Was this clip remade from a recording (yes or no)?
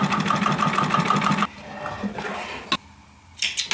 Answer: no